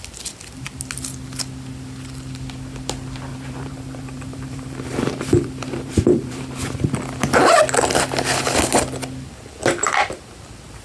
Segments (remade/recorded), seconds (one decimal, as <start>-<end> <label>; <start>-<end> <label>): 0.0-3.3 recorded; 3.3-6.9 remade; 6.9-10.8 recorded